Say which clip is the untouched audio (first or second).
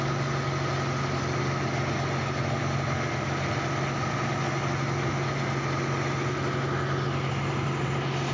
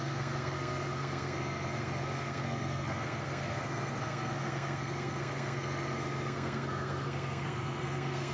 first